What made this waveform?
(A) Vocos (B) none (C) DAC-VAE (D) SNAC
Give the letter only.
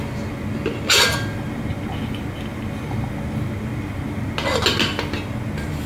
B